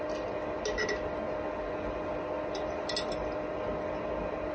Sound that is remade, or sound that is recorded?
recorded